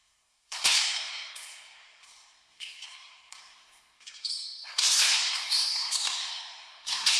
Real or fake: fake